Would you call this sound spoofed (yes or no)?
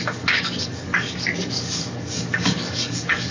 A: yes